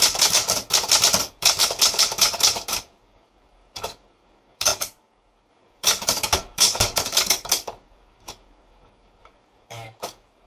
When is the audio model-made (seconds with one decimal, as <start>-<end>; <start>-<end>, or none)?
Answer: 0.0-0.4; 1.2-10.5